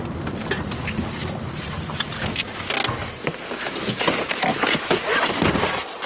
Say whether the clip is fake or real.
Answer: real